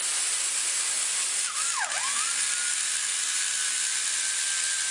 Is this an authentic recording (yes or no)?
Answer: yes